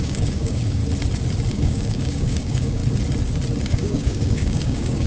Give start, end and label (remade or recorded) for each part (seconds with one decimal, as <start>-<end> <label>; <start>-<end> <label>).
0.0-0.8 remade; 0.8-1.5 recorded; 1.5-2.8 remade; 2.8-3.6 recorded; 3.6-5.1 remade